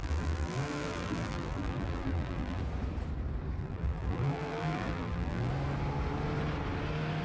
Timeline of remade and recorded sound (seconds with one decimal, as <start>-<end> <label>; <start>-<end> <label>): 0.0-2.6 remade; 2.6-3.6 recorded; 3.6-5.5 remade; 5.5-7.2 recorded